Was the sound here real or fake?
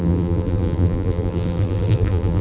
fake